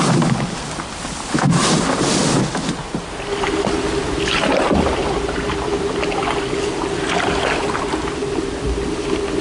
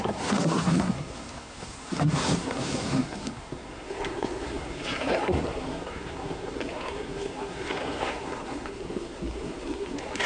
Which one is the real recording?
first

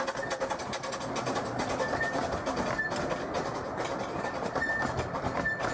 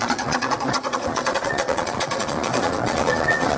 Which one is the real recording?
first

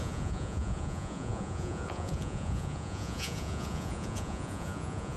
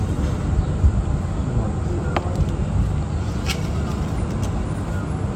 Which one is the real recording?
second